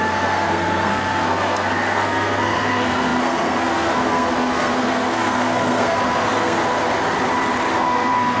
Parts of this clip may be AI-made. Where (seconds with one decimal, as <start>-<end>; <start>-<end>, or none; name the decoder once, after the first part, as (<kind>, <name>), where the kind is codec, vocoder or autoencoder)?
0.0-6.6 (codec, SNAC); 7.7-8.4